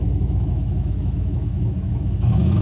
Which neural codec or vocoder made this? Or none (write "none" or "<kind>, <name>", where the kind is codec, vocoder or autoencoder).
autoencoder, DAC-VAE